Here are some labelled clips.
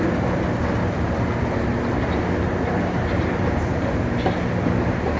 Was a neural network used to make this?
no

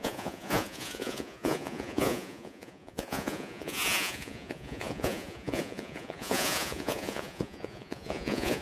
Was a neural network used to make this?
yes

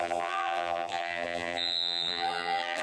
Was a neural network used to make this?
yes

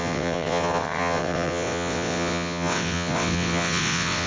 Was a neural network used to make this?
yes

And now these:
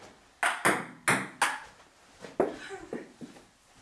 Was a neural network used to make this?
no